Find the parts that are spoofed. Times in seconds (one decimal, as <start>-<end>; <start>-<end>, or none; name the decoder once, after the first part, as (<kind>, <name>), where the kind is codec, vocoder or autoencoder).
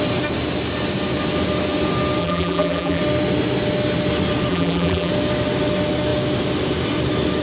2.2-3.0 (vocoder, BigVGAN v2); 4.5-5.1